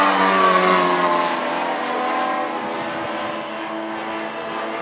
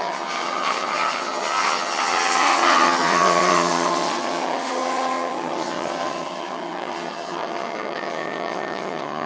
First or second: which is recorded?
first